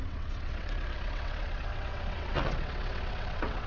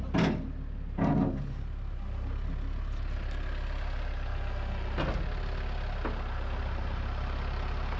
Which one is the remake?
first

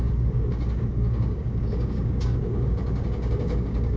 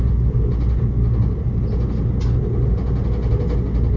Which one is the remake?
first